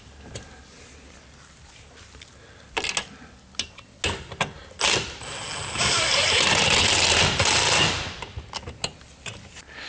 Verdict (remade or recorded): recorded